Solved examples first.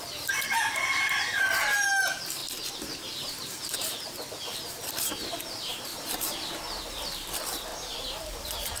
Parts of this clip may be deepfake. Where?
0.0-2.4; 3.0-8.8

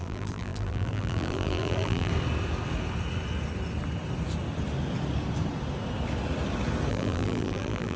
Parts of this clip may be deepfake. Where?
0.0-2.1; 6.9-8.0

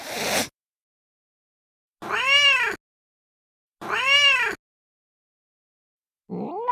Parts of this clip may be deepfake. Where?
none

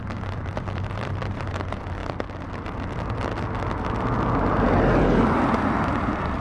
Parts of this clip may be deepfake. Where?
0.0-2.0; 5.8-6.4

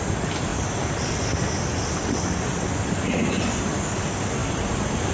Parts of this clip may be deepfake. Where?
none

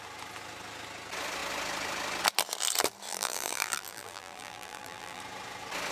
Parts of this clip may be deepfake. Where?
3.1-5.2

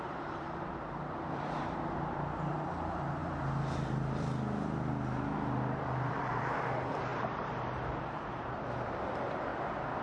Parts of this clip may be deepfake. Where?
0.0-3.2; 6.1-9.5